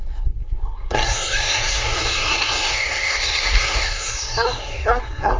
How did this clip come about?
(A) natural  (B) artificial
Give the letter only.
B